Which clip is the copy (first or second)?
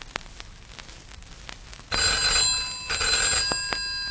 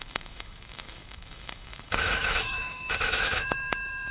second